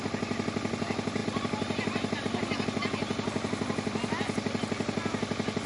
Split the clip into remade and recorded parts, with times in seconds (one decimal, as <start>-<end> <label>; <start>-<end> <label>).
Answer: 0.0-1.2 recorded; 1.2-2.2 remade; 2.2-5.7 recorded